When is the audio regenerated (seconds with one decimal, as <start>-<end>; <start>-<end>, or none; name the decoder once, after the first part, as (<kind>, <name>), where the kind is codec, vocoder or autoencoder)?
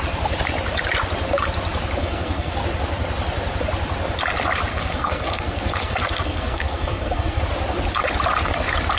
2.0-2.5 (codec, SNAC); 4.7-7.4